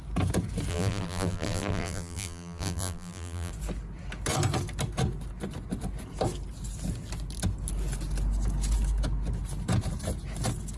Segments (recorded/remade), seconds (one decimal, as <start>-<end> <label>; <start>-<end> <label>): 0.0-0.7 recorded; 0.7-3.5 remade; 3.5-10.8 recorded